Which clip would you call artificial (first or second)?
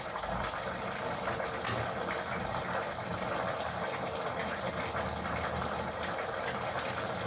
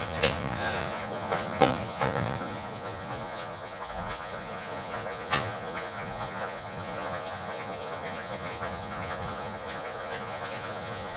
second